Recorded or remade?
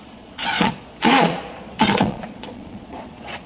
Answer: remade